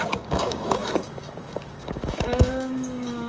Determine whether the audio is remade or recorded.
remade